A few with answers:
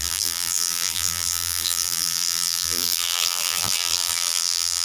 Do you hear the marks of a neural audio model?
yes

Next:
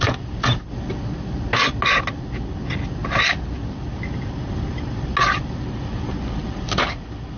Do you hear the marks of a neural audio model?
no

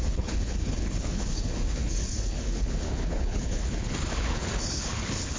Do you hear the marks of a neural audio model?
yes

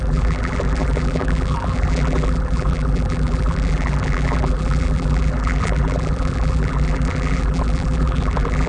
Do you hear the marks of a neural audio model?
yes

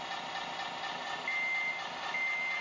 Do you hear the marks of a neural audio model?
no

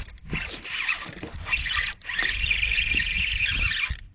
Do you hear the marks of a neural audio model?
yes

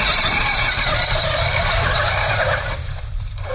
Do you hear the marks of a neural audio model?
yes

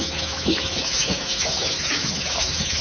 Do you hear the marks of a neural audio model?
yes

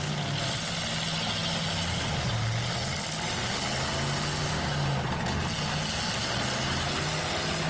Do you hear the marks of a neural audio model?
no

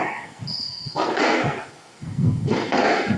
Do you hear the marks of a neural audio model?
yes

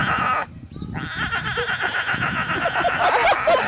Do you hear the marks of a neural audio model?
no